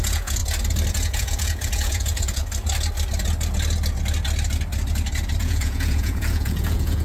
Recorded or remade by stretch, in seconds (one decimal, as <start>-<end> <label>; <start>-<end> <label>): 0.0-0.4 remade; 0.4-0.9 recorded; 0.9-2.4 remade; 2.4-5.4 recorded; 5.4-7.0 remade